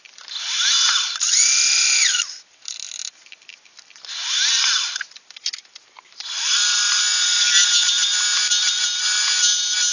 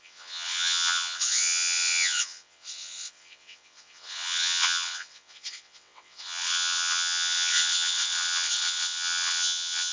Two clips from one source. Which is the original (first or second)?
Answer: first